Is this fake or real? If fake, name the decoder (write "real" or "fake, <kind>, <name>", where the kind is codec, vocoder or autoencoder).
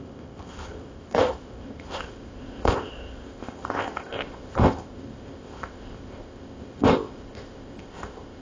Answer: fake, codec, ZipCodec